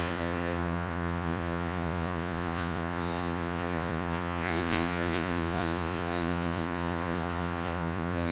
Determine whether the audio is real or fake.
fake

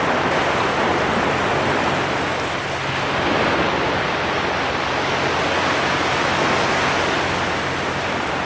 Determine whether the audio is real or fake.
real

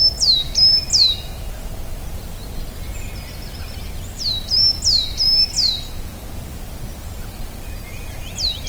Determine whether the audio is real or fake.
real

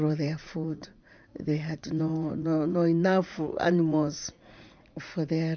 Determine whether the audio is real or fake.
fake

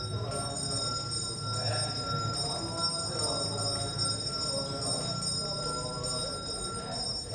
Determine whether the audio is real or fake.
real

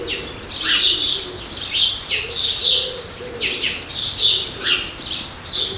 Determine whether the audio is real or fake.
real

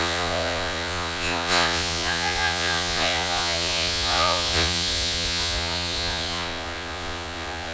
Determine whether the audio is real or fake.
fake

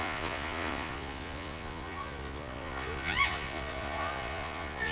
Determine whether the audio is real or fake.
fake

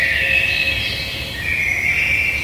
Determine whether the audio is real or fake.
real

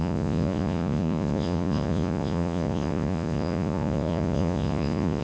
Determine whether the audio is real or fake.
fake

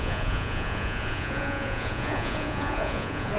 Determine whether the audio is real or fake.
fake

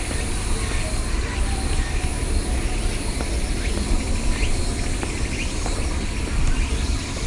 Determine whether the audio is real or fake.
real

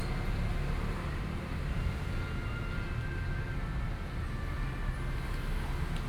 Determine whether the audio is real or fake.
real